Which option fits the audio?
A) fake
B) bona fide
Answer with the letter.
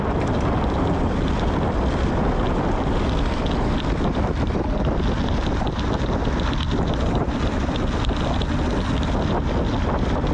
B